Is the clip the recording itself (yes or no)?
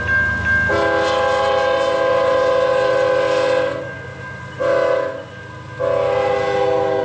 yes